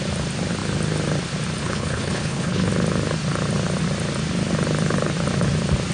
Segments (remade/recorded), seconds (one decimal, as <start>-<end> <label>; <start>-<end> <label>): 0.0-1.6 recorded; 1.6-2.7 remade; 2.7-5.9 recorded